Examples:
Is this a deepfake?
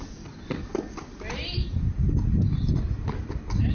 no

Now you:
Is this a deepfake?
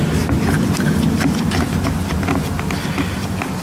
no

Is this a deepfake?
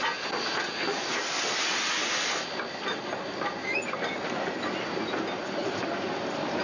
no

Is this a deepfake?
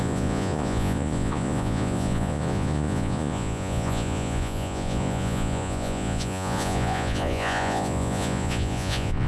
yes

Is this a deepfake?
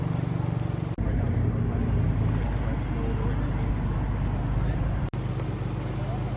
no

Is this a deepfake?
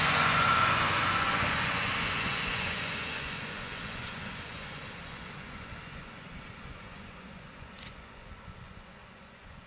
yes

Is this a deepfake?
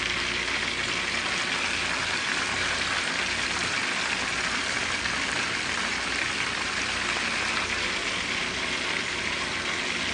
no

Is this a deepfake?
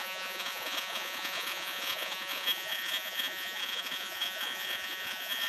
yes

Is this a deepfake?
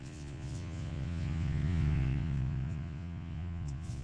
yes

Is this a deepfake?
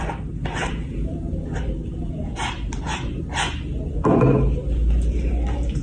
no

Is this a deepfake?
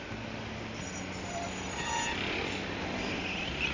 no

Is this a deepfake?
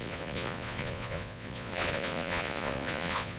yes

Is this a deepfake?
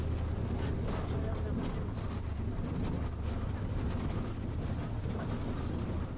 no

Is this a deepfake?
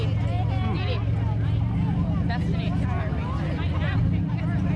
no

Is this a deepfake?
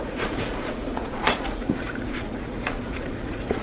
yes